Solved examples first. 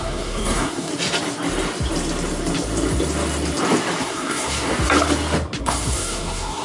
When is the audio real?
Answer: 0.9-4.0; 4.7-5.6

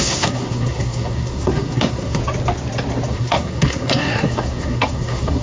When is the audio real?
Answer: 2.2-3.1

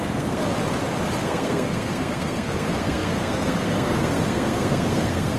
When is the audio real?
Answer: 0.4-1.2

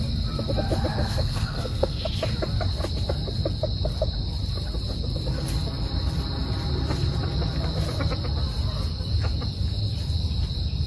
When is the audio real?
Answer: 0.0-1.0; 2.1-10.9

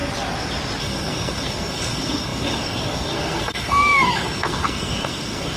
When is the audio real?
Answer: 0.0-0.8

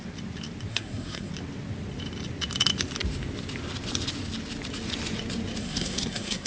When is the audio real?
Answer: 0.0-0.7; 1.3-5.6